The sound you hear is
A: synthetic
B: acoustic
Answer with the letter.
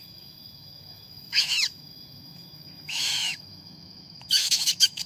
A